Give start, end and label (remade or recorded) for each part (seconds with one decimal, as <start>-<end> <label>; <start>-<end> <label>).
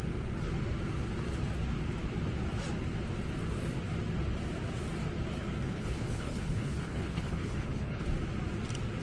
0.0-5.6 recorded; 5.6-8.0 remade; 8.0-9.0 recorded